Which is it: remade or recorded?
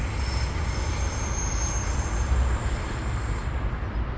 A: recorded